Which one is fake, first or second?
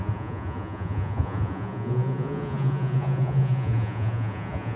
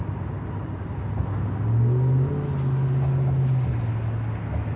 first